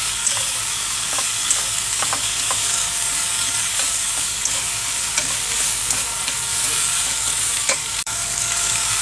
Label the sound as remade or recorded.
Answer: remade